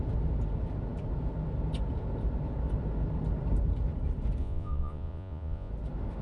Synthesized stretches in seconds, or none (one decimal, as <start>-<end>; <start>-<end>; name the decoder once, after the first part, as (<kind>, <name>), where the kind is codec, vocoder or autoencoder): 4.4-5.7 (vocoder, Vocos)

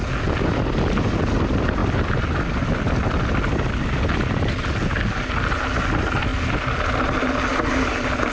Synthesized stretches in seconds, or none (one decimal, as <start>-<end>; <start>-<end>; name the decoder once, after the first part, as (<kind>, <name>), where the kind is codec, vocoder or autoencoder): none

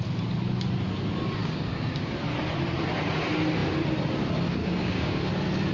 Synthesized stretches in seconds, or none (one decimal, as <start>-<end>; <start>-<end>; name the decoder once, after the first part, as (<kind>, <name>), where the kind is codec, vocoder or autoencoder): 1.4-2.1 (codec, DAC); 4.6-5.3

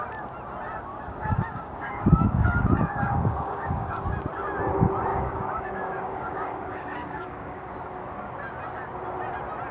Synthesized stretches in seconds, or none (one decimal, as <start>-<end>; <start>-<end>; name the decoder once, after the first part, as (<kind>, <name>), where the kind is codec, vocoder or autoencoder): 0.9-4.0 (codec, DAC); 5.1-7.7

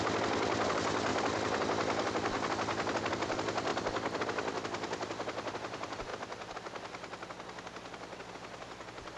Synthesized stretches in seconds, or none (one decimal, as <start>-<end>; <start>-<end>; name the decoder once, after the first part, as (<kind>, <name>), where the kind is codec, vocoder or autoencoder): 1.1-3.1 (vocoder, BigVGAN v2)

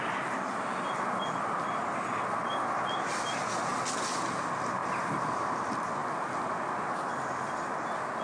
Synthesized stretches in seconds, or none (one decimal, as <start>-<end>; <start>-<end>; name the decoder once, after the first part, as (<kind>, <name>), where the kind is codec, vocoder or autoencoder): none